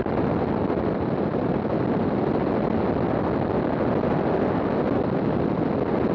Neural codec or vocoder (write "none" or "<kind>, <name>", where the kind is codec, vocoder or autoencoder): none